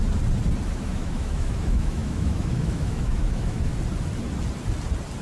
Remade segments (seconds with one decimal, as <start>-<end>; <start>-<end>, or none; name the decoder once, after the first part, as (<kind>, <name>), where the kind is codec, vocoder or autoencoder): 0.7-3.7 (autoencoder, DAC-VAE)